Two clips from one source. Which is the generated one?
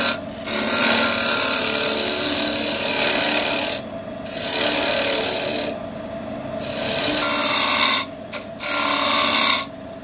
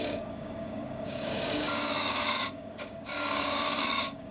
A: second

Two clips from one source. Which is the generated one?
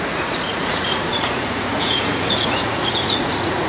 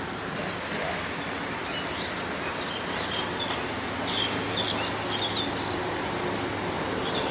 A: first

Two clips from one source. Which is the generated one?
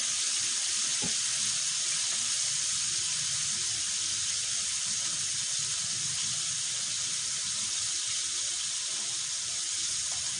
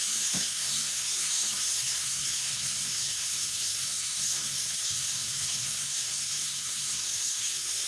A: second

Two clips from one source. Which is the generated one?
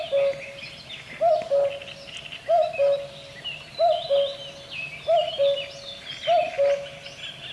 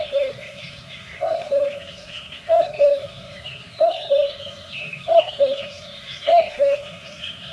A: second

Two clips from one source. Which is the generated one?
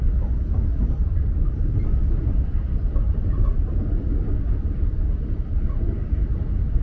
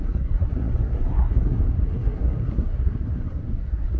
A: second